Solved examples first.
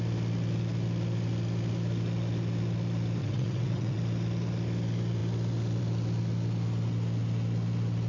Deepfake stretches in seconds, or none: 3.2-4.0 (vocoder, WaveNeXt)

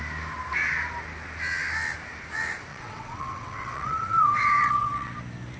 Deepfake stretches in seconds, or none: 2.7-5.1 (vocoder, WaveNeXt)

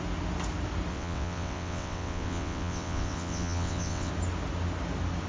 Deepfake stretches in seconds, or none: 0.9-4.1 (vocoder, WaveNeXt)

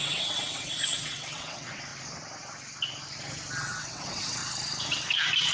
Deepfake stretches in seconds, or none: 0.0-1.9 (vocoder, WaveNeXt); 3.6-4.4

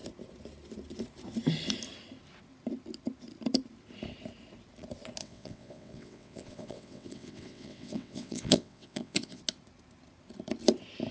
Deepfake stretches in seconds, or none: 5.2-9.4 (vocoder, WaveNeXt)

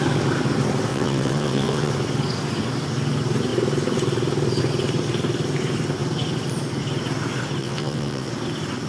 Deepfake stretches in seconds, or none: 0.9-1.9 (vocoder, WaveNeXt); 7.6-8.3

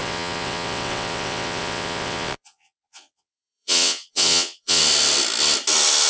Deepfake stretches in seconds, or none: 0.0-4.8 (vocoder, WaveNeXt)

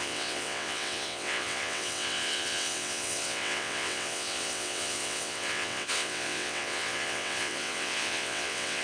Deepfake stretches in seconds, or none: 0.0-8.8 (vocoder, WaveNeXt)